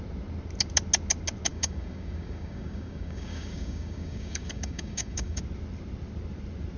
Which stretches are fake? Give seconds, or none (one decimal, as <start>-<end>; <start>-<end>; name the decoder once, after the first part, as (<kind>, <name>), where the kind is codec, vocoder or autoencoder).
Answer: 1.5-5.4 (codec, DAC)